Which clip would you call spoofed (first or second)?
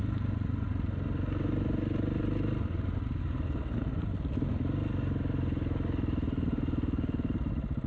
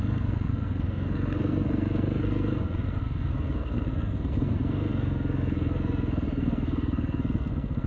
second